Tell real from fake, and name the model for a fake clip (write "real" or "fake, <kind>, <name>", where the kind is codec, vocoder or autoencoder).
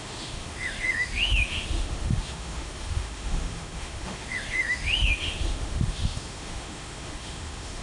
fake, autoencoder, DAC-VAE